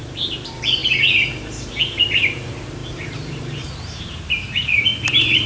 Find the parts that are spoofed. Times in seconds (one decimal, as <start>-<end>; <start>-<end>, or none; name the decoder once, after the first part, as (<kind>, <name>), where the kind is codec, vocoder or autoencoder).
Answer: 0.0-0.8 (vocoder, BigVGAN v2); 1.3-5.5